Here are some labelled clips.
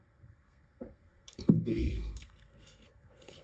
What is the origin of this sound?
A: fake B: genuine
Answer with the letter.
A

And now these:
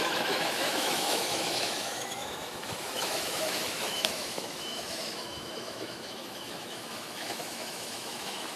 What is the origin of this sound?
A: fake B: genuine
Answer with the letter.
A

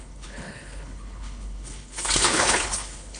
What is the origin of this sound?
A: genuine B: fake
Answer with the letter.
B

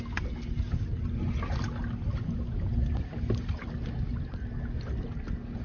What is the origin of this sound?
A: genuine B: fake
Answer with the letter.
A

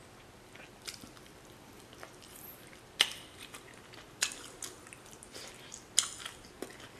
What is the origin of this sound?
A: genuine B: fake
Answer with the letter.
A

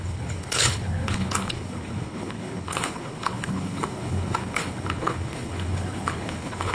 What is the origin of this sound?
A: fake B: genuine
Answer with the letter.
A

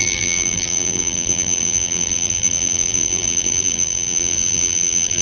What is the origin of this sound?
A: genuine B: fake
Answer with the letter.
B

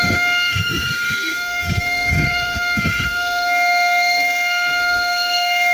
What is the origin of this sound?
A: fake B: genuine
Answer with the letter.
A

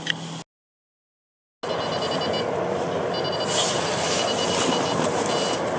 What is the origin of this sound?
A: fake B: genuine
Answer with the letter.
B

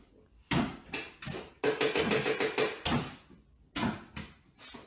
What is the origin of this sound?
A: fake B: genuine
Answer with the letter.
B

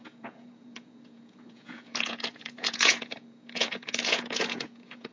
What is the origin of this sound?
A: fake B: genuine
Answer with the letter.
A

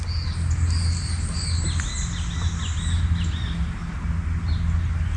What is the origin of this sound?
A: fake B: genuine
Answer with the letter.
B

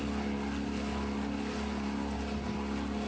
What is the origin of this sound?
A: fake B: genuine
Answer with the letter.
B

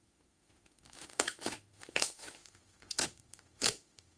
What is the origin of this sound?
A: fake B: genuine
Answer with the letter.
A